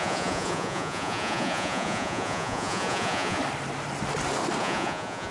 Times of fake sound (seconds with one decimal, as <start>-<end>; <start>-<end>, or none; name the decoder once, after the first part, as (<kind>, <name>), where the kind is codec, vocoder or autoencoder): 0.0-3.4 (vocoder, Vocos); 4.6-5.3